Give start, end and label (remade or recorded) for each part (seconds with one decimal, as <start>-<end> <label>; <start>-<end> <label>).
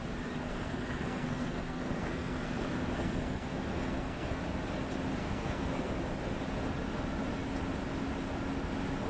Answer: 0.0-0.4 recorded; 0.4-4.4 remade; 4.4-5.2 recorded; 5.2-5.9 remade; 5.9-9.1 recorded